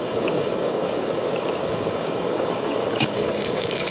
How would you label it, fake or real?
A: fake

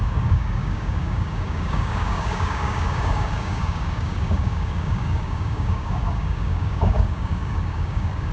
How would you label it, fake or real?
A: fake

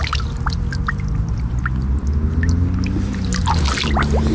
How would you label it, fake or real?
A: real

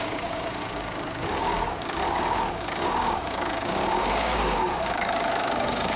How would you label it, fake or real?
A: fake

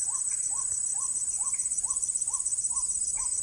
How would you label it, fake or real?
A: real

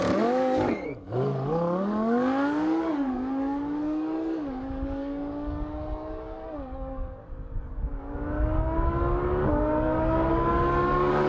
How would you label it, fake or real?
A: fake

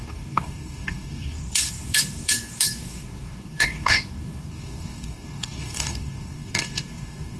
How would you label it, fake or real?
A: fake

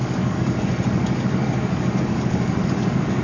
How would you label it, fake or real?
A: fake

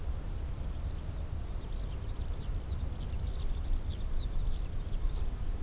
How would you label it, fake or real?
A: real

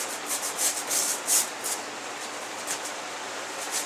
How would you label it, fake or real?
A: real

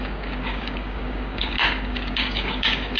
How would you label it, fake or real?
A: fake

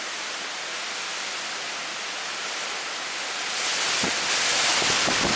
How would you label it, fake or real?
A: real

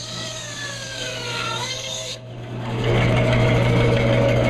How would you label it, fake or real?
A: fake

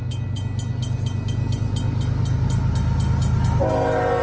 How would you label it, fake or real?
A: real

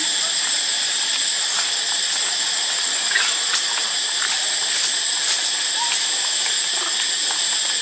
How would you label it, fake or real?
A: real